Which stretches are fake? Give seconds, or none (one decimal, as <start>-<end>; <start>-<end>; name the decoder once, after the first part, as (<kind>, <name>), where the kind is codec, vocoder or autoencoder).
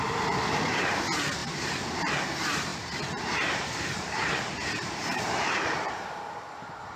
0.0-7.0 (vocoder, BigVGAN v2)